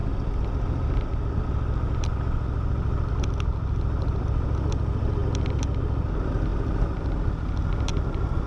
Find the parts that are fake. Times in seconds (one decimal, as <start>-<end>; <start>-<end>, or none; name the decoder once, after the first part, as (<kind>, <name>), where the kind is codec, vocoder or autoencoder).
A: none